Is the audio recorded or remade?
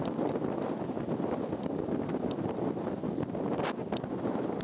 recorded